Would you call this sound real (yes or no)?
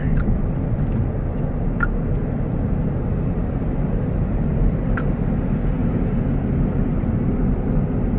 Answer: yes